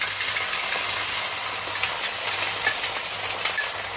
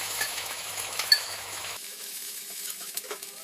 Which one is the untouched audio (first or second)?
first